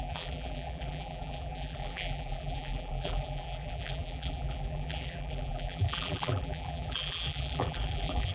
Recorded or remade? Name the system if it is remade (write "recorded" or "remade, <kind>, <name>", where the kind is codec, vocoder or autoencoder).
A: remade, vocoder, BigVGAN v2